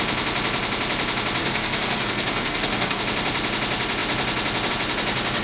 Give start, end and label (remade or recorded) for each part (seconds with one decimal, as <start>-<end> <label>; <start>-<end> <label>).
0.0-1.4 recorded; 1.4-3.0 remade; 3.0-5.4 recorded